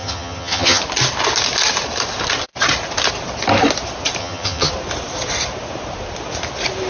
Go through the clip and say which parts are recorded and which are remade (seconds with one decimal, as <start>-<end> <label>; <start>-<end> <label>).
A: 0.0-0.8 remade; 0.8-4.2 recorded; 4.2-4.7 remade; 4.7-6.9 recorded